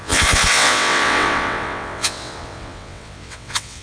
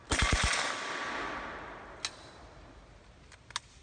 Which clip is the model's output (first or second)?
first